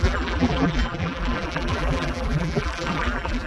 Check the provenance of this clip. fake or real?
fake